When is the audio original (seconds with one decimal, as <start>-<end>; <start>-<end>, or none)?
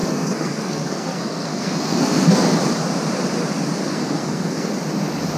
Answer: 2.6-3.9; 4.7-5.4